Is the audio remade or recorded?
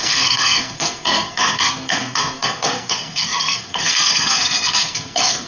remade